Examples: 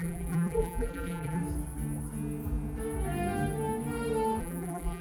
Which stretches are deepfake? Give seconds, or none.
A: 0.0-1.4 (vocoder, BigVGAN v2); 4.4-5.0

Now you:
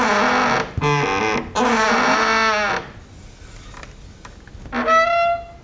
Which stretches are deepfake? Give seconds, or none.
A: none

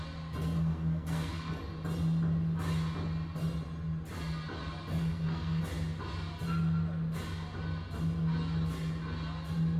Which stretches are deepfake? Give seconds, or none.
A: 0.4-1.6 (codec, SNAC); 4.9-5.6

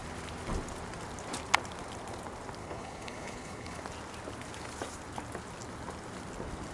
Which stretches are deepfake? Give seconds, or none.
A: 2.6-3.8 (codec, HILCodec)

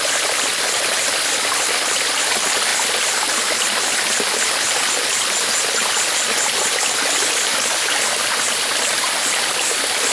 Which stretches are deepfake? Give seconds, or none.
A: none